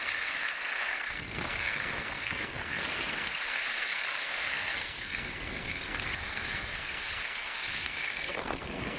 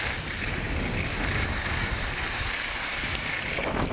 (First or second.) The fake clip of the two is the first